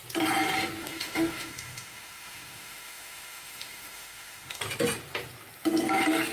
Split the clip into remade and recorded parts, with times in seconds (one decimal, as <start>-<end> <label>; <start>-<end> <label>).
0.0-0.8 recorded; 0.8-4.6 remade; 4.6-6.3 recorded